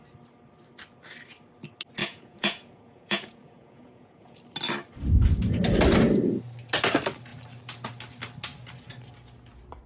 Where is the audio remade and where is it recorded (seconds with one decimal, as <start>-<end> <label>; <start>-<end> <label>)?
0.0-2.0 recorded; 2.0-4.4 remade; 4.4-9.9 recorded